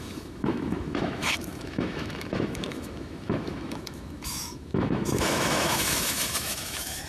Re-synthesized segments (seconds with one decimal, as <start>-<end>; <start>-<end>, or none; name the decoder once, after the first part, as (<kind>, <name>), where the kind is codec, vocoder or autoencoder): 0.0-7.1 (autoencoder, DAC-VAE)